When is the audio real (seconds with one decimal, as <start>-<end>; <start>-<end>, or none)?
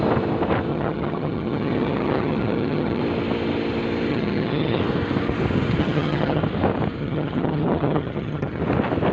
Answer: 0.0-0.7; 3.0-4.1; 4.8-5.8; 6.4-7.0; 8.6-9.1